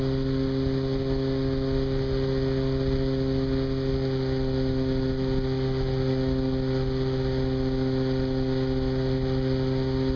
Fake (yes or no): no